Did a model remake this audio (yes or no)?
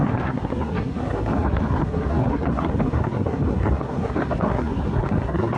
yes